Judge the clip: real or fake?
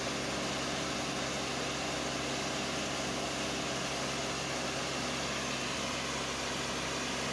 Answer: real